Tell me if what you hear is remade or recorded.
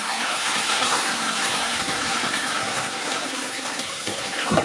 remade